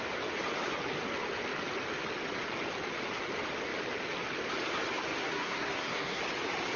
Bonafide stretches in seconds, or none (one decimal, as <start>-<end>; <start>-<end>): 0.0-5.2; 6.2-6.8